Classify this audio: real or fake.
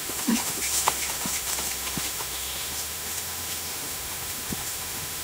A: fake